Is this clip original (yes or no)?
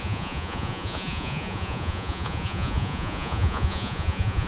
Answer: no